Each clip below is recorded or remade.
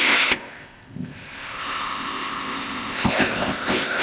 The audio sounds remade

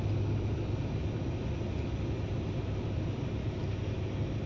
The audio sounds recorded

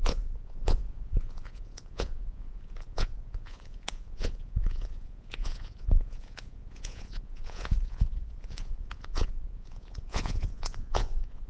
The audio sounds remade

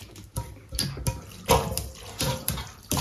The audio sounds remade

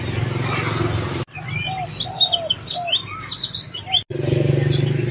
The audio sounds recorded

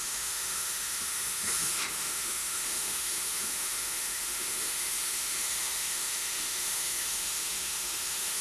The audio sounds remade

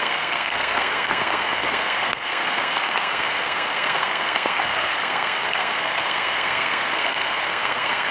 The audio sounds remade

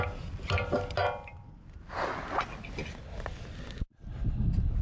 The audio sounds recorded